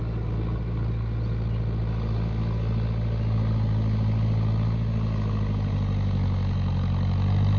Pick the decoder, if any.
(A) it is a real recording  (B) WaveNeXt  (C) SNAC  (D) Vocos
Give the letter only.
A